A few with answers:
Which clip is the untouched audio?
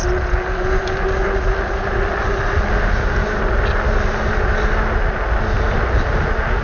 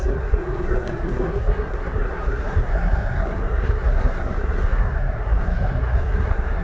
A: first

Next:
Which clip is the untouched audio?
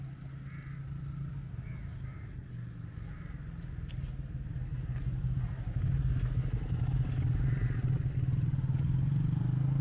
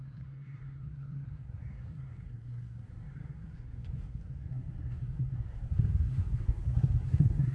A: first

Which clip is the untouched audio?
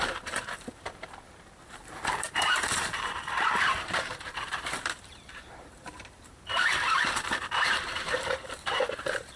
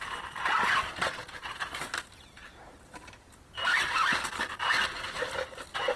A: second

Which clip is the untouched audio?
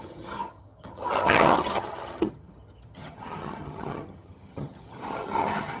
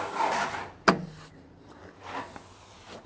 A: second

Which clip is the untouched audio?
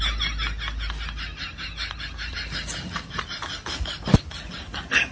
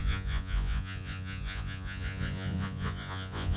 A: first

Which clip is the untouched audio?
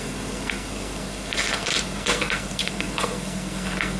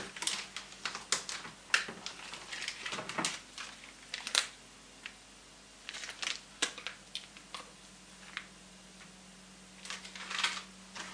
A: second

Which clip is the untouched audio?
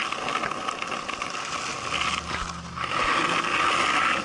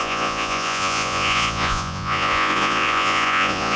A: first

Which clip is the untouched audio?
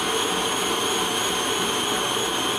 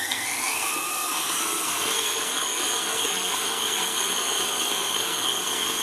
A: first